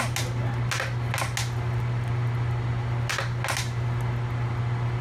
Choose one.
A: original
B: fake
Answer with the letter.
A